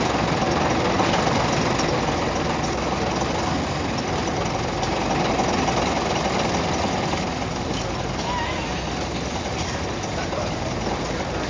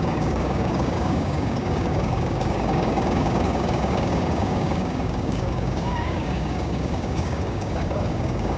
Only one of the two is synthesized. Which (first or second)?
second